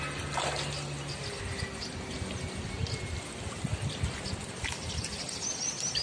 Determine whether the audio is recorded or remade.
recorded